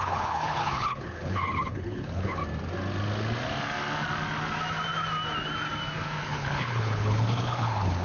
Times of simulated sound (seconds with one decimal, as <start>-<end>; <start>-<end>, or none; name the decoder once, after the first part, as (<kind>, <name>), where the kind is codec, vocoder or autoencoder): 0.0-2.4 (codec, HILCodec); 6.2-8.0